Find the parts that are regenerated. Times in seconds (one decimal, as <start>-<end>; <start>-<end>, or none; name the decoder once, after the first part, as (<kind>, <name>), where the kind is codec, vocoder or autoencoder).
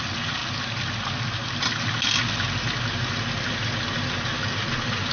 none